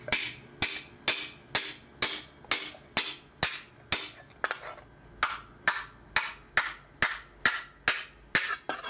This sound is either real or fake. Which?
real